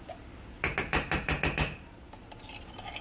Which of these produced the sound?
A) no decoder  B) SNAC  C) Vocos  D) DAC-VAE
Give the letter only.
A